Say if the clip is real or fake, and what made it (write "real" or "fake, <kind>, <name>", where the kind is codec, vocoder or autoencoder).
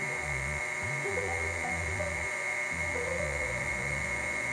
fake, vocoder, Vocos